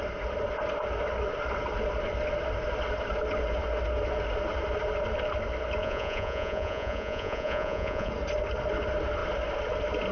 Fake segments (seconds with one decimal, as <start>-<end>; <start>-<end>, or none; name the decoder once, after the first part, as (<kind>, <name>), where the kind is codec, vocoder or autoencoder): 5.8-8.1 (vocoder, Vocos)